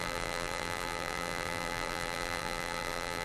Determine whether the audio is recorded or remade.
remade